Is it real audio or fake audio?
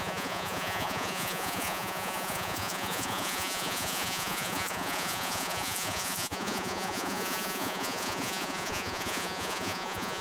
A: fake